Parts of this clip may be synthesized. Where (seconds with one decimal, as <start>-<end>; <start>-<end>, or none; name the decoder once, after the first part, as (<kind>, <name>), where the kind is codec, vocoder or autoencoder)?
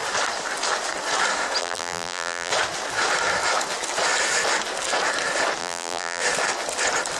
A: 1.6-2.5 (vocoder, BigVGAN v2); 5.6-6.2